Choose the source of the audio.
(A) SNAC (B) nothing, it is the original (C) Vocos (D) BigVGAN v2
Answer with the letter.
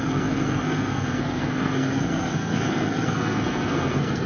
A